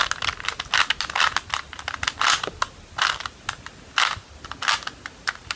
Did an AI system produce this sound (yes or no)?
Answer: no